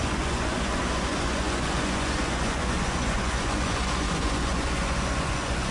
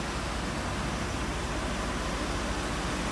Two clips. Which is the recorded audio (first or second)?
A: second